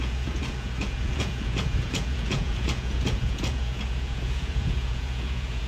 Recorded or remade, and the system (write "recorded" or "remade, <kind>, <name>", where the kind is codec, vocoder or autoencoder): remade, vocoder, Vocos